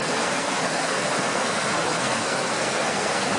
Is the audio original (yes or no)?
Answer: no